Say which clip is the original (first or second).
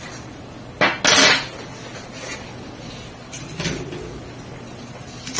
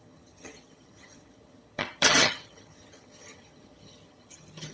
first